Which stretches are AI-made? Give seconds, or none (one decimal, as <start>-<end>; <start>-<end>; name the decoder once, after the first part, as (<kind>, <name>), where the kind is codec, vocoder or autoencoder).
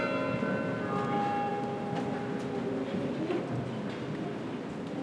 none